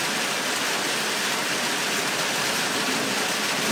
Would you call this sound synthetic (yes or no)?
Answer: no